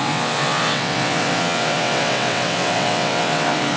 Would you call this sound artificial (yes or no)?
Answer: yes